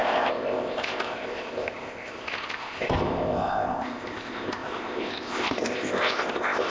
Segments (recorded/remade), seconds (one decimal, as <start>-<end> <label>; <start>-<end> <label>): 0.0-6.7 remade